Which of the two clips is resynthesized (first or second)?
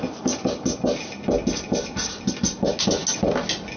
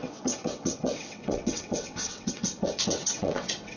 second